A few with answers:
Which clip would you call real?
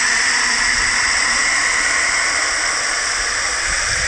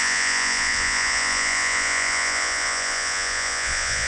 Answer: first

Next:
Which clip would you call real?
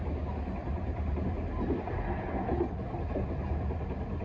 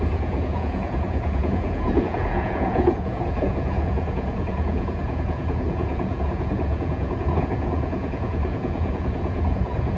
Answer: first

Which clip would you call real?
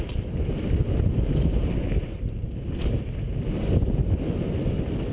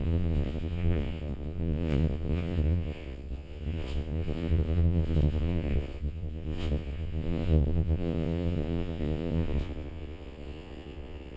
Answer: first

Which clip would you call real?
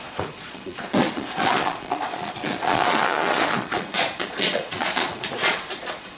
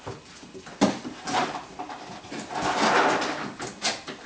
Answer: second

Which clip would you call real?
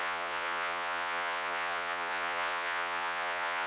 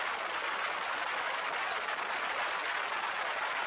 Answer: second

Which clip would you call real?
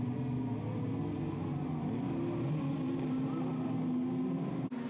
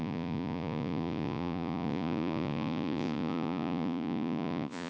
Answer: first